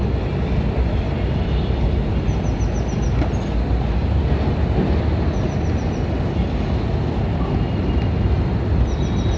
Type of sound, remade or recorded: recorded